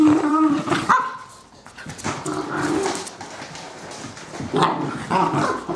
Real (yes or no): no